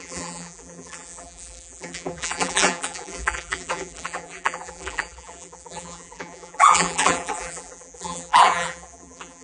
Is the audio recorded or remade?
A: remade